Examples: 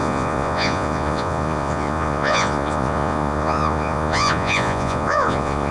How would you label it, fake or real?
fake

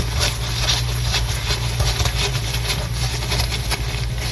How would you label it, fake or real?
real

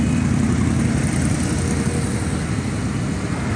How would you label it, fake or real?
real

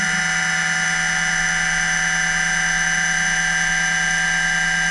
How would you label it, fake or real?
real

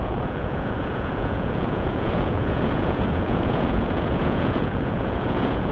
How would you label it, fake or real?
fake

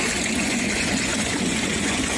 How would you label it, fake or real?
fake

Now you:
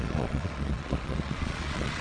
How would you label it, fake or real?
fake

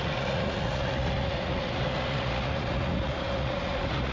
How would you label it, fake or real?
fake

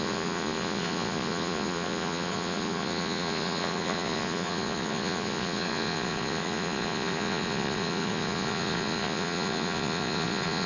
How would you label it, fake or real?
fake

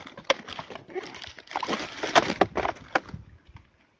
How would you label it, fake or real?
real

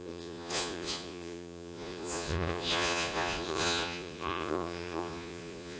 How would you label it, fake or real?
fake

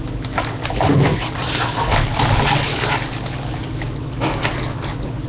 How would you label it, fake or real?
real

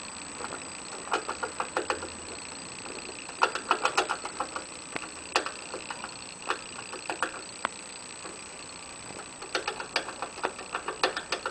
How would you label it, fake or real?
real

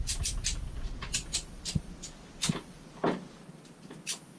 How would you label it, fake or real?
real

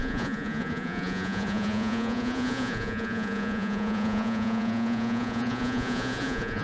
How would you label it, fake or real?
fake